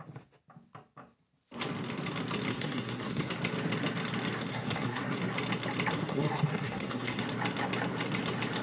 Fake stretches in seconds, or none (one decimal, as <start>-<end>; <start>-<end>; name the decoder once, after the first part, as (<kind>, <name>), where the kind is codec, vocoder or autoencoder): 2.5-3.3 (codec, SNAC); 4.5-5.2; 6.0-7.2